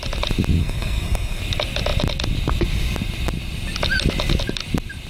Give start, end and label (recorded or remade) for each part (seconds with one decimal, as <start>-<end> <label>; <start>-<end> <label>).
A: 0.0-0.6 recorded; 0.6-1.4 remade; 1.4-5.1 recorded